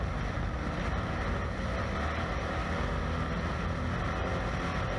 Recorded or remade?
recorded